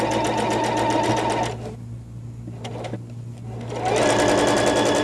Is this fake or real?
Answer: real